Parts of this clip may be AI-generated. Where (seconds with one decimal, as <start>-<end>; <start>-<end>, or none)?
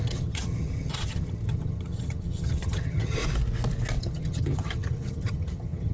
0.0-3.2; 4.0-5.9